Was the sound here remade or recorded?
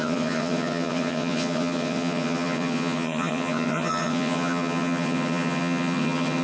remade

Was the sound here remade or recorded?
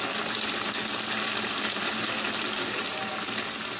recorded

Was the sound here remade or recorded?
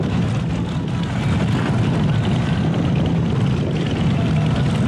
recorded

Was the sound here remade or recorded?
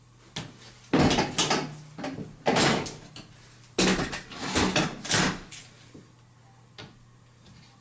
recorded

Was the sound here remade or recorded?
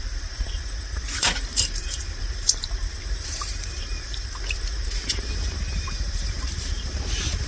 remade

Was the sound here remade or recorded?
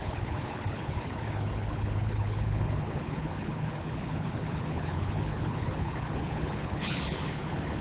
remade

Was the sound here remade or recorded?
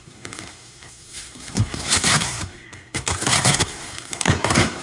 remade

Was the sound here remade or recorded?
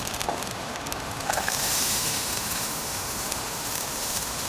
remade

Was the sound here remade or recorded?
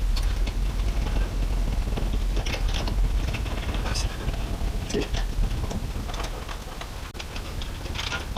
recorded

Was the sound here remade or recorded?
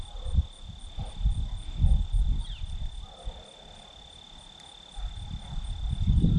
recorded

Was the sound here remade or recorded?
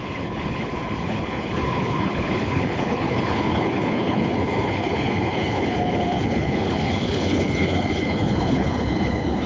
remade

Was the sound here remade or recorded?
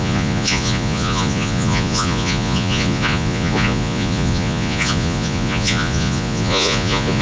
remade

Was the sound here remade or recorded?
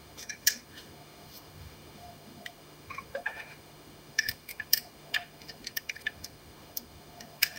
remade